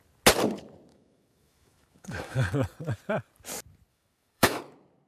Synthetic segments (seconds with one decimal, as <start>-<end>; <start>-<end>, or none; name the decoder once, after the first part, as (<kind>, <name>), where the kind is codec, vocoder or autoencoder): 0.9-2.5 (autoencoder, DAC-VAE); 3.9-4.6